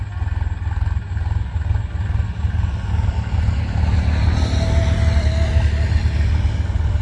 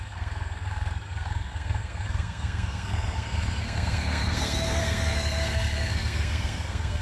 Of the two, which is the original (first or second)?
first